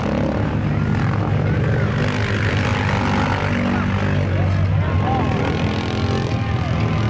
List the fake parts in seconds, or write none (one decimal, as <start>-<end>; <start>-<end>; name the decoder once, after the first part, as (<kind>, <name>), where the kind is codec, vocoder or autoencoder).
none